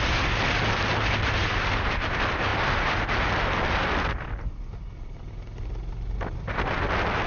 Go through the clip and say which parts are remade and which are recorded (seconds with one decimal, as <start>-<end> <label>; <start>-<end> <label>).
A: 0.0-7.3 recorded